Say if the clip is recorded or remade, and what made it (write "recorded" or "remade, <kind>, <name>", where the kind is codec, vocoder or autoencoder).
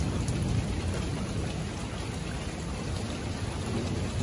recorded